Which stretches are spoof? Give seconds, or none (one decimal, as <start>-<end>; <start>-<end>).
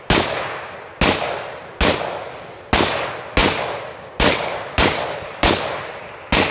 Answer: 3.4-5.9